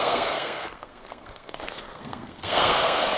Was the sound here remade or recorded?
remade